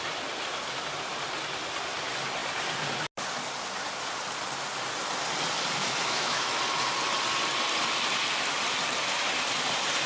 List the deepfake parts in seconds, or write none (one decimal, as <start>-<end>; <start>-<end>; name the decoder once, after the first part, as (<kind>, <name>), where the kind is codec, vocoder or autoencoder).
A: 5.8-6.6 (autoencoder, DAC-VAE)